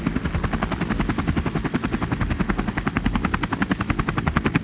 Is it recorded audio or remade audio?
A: recorded